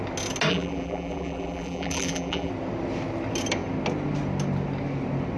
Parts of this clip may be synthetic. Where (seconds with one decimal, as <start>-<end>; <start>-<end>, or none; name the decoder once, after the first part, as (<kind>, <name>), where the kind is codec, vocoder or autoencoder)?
0.5-2.5 (vocoder, BigVGAN v2)